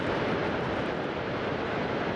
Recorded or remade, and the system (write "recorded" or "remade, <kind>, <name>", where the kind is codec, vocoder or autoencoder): recorded